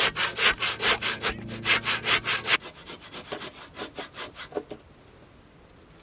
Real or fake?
real